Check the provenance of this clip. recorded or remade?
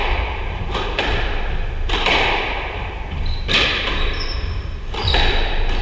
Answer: remade